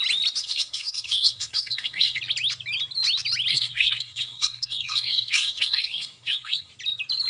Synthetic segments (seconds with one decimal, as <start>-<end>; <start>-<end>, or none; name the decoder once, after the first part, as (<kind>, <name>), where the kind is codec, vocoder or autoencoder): 0.4-2.2 (codec, SNAC); 3.5-6.7